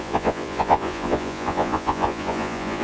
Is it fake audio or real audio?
fake